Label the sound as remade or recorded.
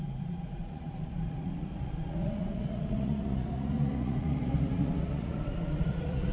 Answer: remade